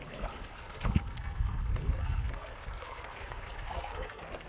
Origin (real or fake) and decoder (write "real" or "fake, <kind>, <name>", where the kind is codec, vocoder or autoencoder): fake, codec, SNAC